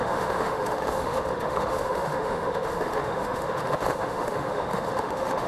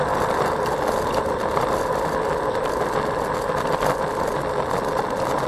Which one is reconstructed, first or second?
first